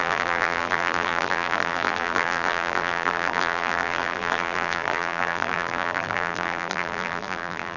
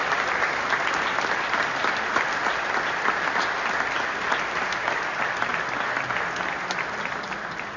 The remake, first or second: first